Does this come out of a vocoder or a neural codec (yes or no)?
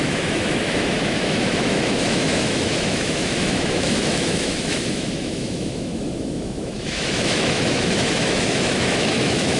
yes